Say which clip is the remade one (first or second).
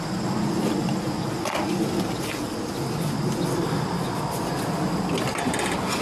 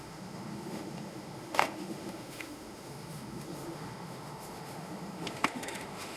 second